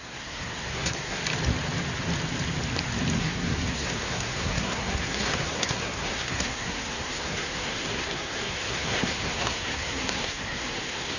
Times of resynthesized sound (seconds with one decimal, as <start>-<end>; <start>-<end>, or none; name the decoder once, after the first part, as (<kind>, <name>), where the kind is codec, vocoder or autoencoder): 0.0-1.2 (codec, SNAC); 3.2-11.2